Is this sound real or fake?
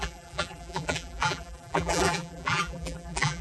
fake